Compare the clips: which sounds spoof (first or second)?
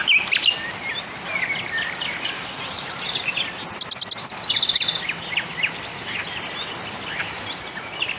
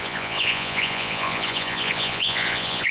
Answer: second